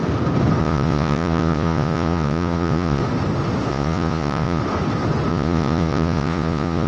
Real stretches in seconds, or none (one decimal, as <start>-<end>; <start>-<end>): 0.0-0.6; 3.0-3.7; 4.6-5.3